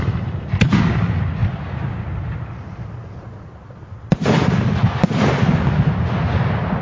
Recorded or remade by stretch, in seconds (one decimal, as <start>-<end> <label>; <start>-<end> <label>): 0.0-6.8 recorded